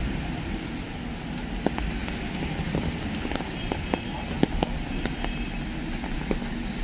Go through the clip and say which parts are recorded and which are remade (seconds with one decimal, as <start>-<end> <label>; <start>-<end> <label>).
0.0-6.8 recorded